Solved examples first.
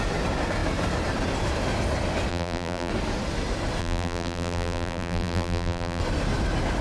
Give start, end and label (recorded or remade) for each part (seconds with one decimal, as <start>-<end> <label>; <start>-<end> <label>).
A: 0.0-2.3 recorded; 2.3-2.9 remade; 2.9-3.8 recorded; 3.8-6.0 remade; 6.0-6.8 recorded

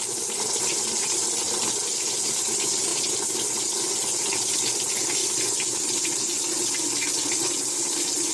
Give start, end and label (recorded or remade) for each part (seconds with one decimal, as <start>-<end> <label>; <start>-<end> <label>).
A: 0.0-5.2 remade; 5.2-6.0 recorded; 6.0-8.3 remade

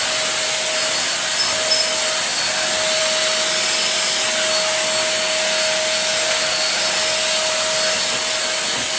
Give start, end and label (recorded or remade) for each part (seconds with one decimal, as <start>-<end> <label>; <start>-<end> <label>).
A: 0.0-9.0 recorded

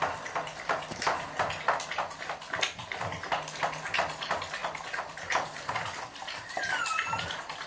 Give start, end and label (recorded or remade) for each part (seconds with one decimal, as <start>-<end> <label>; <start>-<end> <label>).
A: 0.0-4.6 recorded; 4.6-6.0 remade; 6.0-7.7 recorded